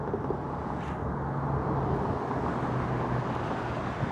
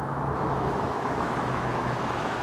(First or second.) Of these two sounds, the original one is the first